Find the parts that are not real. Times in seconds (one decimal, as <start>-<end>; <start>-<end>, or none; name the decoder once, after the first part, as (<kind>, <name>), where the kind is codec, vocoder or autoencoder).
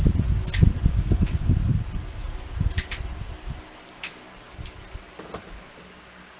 0.9-1.5 (codec, DAC)